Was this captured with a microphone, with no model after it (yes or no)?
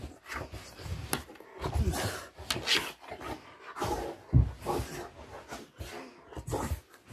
yes